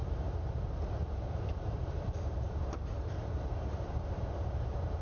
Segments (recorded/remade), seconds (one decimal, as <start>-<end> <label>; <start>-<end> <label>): 0.0-0.5 remade; 0.5-1.0 recorded; 1.0-4.0 remade; 4.0-5.0 recorded